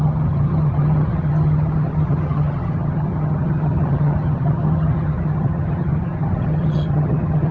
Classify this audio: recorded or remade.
remade